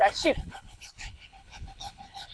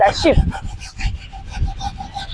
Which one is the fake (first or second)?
first